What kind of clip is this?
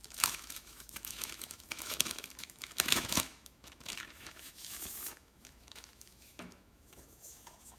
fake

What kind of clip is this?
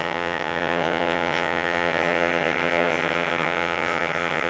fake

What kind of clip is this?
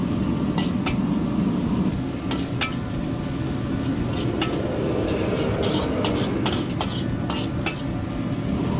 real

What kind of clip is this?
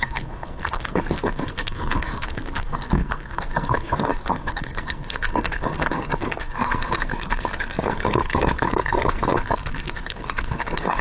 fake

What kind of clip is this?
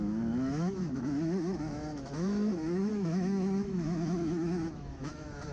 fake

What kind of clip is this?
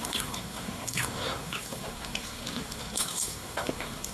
fake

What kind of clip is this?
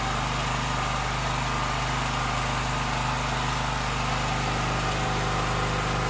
real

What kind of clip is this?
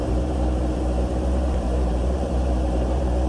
fake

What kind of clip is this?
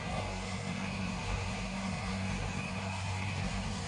fake